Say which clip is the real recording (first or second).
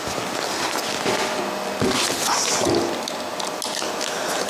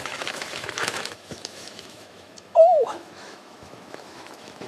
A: first